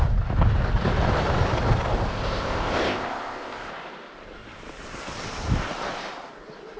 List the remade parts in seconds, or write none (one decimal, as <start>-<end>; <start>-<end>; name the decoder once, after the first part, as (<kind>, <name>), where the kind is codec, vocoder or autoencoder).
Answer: 2.1-3.7 (codec, ZipCodec)